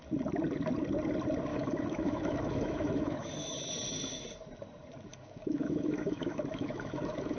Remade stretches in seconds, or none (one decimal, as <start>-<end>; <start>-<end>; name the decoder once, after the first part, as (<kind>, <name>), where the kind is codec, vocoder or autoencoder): 1.5-3.7 (autoencoder, DAC-VAE); 5.1-7.4